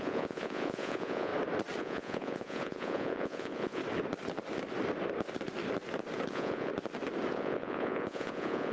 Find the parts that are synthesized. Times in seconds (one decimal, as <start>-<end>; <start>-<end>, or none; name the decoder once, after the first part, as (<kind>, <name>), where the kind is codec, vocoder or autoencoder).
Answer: 0.0-1.3 (vocoder, Vocos); 1.8-3.8; 6.3-6.7; 7.3-8.7